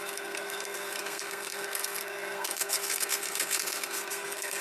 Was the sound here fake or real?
fake